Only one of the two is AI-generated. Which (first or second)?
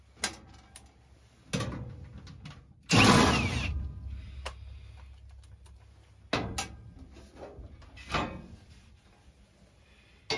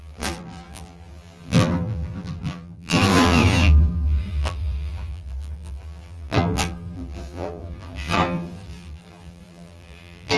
second